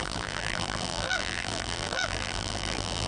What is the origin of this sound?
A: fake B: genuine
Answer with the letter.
A